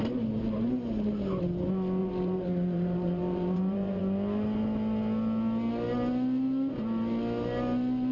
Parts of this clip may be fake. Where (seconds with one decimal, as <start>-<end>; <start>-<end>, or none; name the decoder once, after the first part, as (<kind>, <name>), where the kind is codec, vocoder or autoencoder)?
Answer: 2.0-4.0 (vocoder, BigVGAN v2)